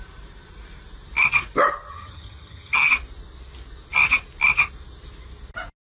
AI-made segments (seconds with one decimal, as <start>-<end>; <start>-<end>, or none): 1.9-2.9